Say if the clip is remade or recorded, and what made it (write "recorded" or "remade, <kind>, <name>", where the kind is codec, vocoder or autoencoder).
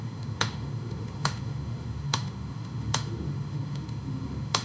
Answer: remade, autoencoder, DAC-VAE